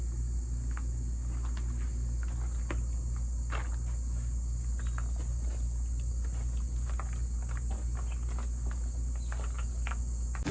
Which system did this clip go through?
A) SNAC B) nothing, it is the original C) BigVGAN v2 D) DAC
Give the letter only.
B